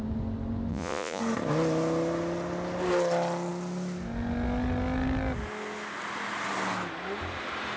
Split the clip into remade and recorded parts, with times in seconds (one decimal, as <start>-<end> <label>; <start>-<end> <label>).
0.0-0.7 recorded; 0.7-1.2 remade; 1.2-7.8 recorded